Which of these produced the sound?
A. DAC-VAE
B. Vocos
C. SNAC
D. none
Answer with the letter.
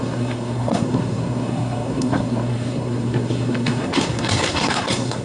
C